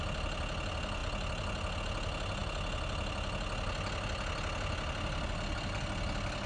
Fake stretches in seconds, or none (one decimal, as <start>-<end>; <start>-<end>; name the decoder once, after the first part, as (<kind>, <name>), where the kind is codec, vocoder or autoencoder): none